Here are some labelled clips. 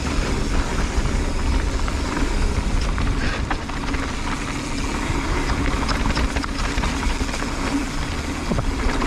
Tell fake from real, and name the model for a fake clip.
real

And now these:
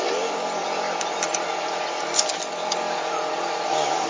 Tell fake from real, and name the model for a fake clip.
real